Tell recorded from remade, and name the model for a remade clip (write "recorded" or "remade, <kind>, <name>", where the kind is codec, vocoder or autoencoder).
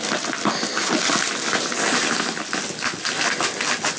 recorded